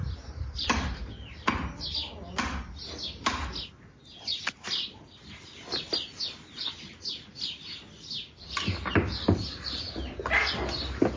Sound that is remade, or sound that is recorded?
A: recorded